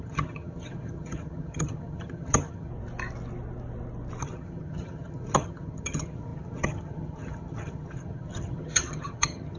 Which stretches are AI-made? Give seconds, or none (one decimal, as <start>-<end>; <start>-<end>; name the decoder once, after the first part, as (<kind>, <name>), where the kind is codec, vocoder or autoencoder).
0.0-2.7 (vocoder, HiFi-GAN); 4.2-9.6